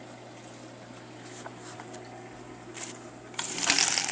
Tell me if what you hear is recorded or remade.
recorded